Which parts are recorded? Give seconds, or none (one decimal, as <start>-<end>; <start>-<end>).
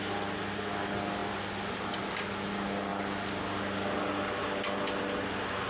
0.0-5.7